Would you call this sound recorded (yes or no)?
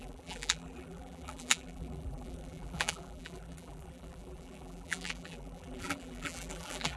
no